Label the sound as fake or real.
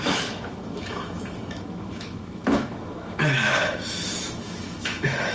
fake